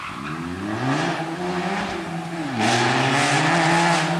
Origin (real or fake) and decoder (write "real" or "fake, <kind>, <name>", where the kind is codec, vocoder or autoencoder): real